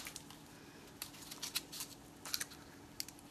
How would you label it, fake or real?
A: real